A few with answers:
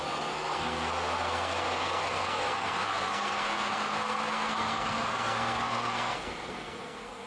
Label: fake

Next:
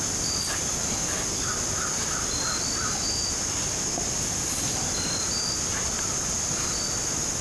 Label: real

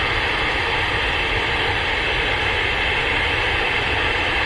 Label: real